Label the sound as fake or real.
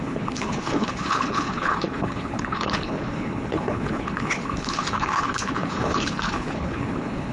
fake